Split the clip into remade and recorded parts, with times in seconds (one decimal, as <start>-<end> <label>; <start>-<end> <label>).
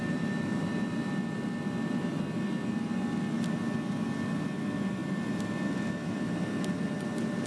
0.0-7.5 recorded